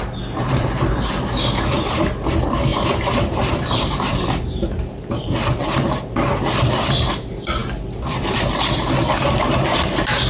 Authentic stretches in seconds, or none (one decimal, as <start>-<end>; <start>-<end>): 0.0-2.7; 5.1-10.3